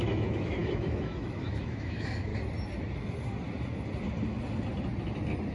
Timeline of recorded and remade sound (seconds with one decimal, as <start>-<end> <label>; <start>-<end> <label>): 0.0-2.3 remade; 2.3-5.5 recorded

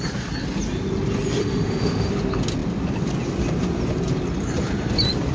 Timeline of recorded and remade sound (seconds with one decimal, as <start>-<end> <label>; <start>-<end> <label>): 0.0-1.4 recorded; 1.4-2.1 remade; 2.1-5.3 recorded